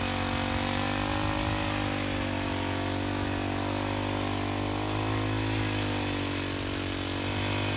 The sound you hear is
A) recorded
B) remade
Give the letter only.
A